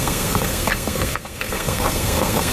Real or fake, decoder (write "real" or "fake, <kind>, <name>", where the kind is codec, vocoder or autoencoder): fake, codec, SNAC